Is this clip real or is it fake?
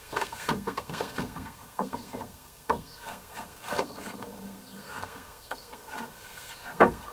fake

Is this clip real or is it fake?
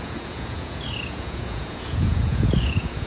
fake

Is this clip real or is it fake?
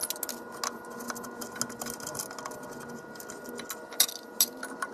real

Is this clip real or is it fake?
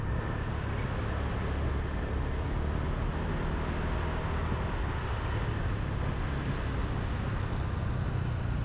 real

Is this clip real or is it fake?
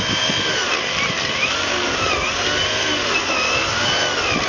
real